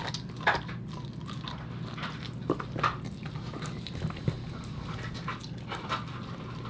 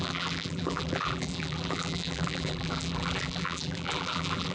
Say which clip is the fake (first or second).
second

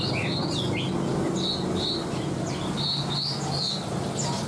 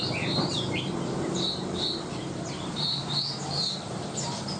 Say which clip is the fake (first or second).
second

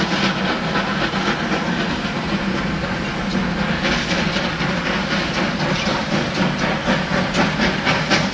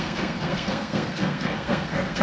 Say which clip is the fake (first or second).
second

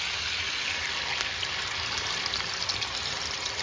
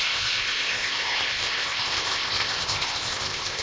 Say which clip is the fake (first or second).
second